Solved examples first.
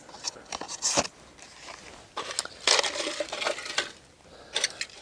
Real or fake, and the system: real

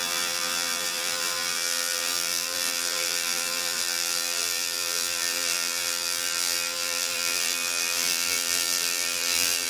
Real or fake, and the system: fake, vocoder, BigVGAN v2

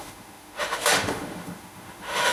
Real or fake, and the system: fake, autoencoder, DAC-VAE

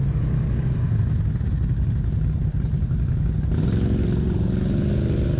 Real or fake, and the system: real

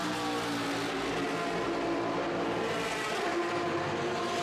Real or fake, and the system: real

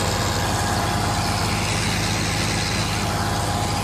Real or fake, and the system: real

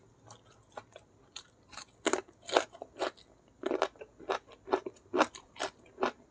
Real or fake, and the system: real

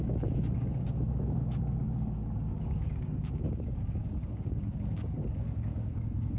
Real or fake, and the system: fake, codec, DAC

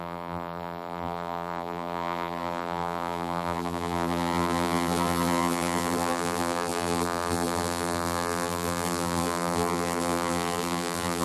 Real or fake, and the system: fake, vocoder, BigVGAN v2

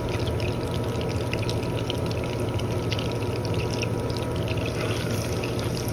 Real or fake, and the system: real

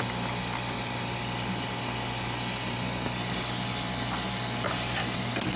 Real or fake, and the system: real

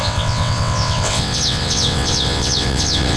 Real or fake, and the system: fake, vocoder, WaveNeXt